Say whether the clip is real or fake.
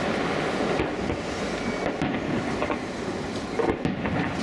real